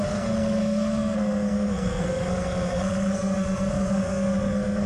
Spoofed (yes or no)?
yes